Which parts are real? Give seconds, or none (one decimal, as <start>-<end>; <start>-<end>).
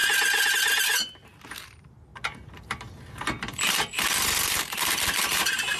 0.0-0.5; 2.1-4.5